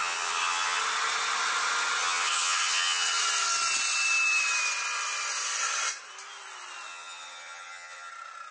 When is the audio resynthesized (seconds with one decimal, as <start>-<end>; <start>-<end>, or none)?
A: 0.0-0.8; 2.0-3.2; 6.9-8.1